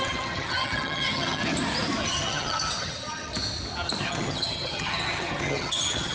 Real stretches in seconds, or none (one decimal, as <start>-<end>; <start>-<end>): 1.4-2.1; 3.3-4.0